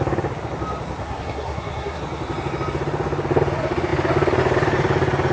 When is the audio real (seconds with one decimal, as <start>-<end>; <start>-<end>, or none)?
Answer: 0.0-1.0; 2.0-5.3